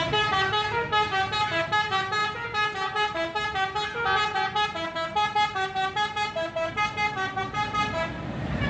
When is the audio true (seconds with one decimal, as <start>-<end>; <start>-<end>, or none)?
0.0-8.7